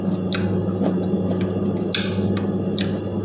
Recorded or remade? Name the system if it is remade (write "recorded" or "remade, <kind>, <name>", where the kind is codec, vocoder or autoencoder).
recorded